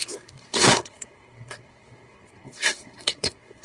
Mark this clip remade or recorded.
remade